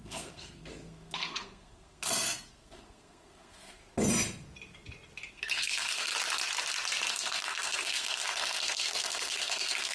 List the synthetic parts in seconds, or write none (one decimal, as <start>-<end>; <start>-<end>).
0.0-3.8; 5.3-6.1; 7.1-9.9